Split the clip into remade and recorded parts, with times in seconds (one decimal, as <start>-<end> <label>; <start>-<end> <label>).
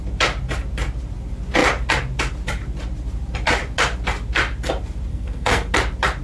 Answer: 0.0-5.1 recorded; 5.1-5.7 remade; 5.7-6.2 recorded